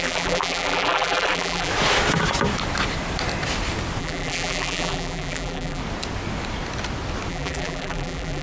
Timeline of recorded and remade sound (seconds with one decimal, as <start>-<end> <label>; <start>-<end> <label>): 0.0-1.7 remade; 1.7-4.0 recorded; 4.0-5.8 remade; 5.8-7.3 recorded; 7.3-8.4 remade